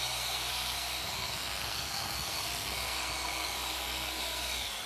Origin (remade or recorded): remade